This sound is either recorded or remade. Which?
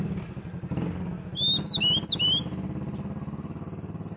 recorded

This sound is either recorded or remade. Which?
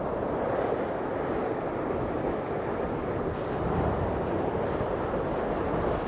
recorded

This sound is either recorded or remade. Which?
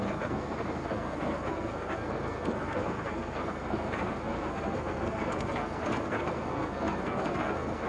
remade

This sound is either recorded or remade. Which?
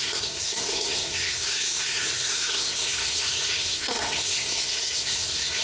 remade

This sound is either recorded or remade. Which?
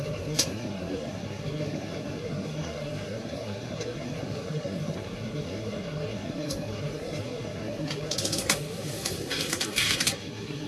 remade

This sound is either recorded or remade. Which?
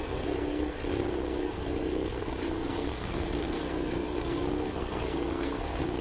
remade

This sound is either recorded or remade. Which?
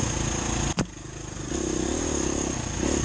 recorded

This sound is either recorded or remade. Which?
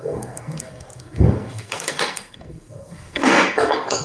remade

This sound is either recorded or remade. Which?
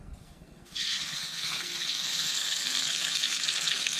remade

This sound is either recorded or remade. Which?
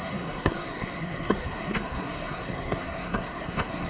remade